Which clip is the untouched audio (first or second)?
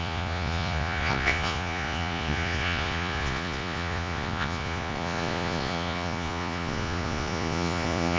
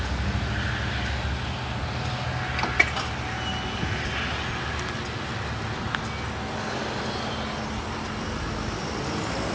second